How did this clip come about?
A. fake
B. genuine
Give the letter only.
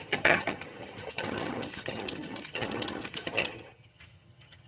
A